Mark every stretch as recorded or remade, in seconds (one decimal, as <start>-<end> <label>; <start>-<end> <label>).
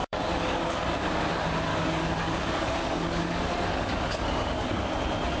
0.0-1.2 remade; 1.2-1.7 recorded; 1.7-4.9 remade; 4.9-5.4 recorded